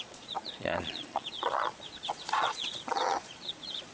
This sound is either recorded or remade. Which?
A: remade